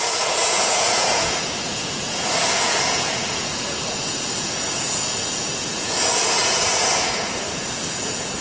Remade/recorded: remade